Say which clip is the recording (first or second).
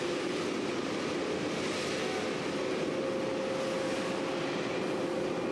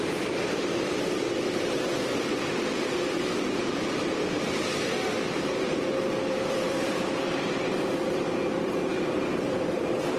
first